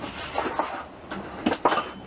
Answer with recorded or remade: recorded